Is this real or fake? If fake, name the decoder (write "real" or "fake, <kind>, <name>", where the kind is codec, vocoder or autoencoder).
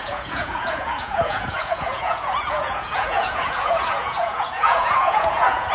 fake, vocoder, Vocos